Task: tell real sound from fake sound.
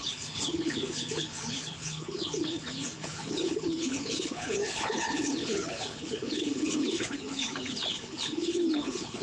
fake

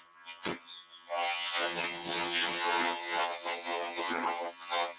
fake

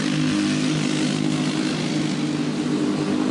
real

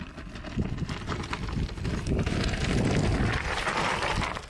fake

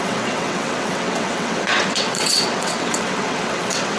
fake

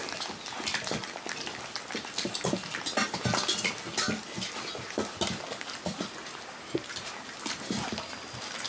real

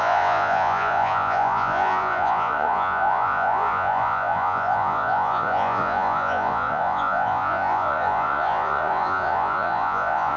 fake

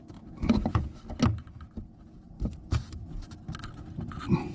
real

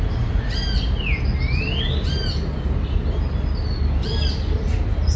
real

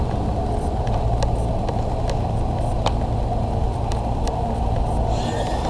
real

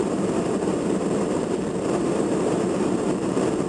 fake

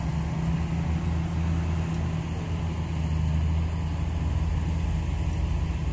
real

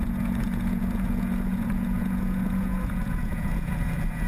fake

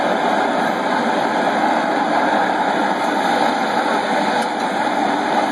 real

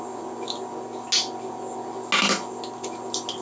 real